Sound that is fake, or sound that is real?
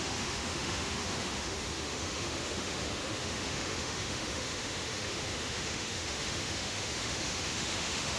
fake